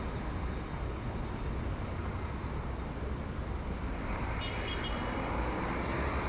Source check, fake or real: real